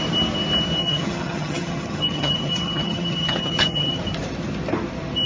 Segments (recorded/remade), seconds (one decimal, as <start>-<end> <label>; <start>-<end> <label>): 0.0-0.8 recorded; 0.8-4.0 remade; 4.0-5.3 recorded